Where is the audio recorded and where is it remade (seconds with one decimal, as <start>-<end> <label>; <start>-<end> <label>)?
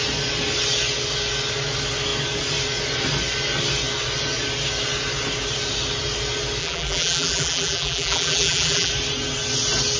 0.0-6.6 recorded; 6.6-8.9 remade; 8.9-10.0 recorded